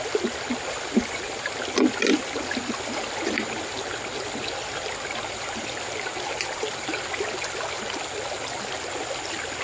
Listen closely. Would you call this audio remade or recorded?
recorded